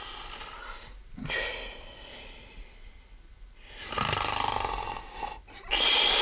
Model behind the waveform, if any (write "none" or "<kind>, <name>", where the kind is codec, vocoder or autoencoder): none